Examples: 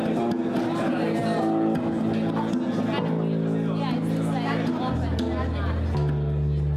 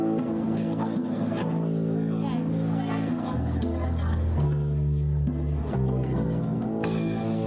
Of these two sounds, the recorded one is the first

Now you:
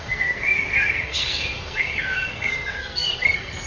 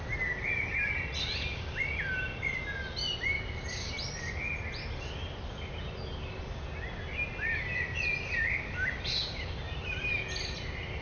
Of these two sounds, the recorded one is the second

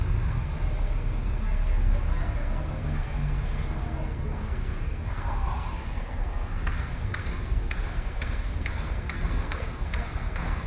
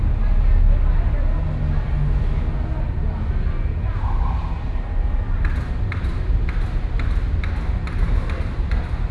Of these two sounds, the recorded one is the second